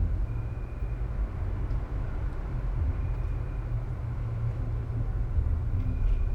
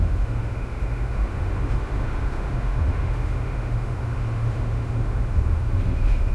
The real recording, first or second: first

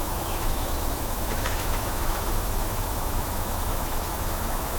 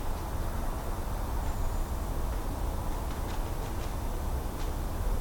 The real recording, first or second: second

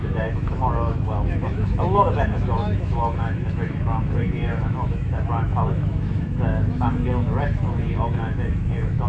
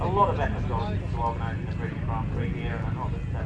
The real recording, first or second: second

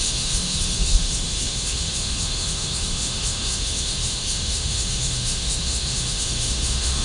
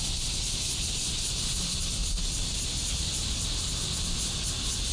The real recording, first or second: second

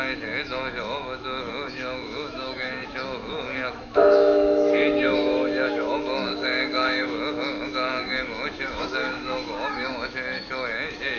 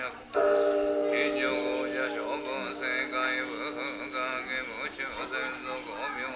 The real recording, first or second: second